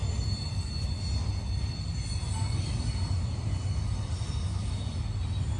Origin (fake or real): real